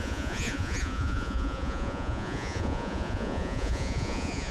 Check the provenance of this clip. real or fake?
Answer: fake